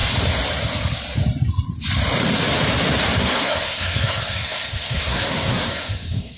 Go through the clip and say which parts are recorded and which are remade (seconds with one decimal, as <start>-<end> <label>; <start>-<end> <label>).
0.0-3.2 recorded; 3.2-6.4 remade